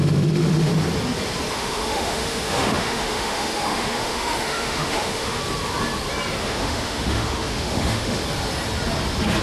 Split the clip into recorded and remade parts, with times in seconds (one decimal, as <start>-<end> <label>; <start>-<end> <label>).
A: 0.0-0.7 remade; 0.7-1.5 recorded; 1.5-5.4 remade; 5.4-6.4 recorded; 6.4-8.2 remade; 8.2-9.4 recorded